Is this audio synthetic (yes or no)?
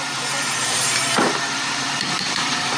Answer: yes